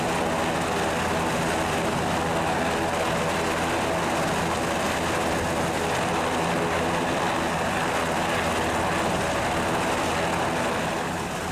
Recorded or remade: recorded